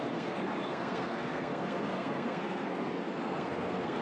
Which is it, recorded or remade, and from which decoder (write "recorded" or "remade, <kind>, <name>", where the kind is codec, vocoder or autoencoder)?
remade, codec, SNAC